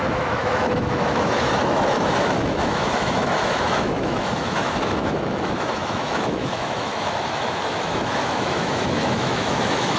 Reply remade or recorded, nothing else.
remade